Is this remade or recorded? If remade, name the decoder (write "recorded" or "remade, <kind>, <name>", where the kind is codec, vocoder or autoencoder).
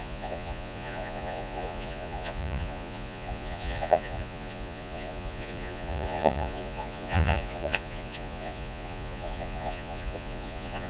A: remade, vocoder, Vocos